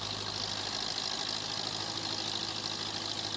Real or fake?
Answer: real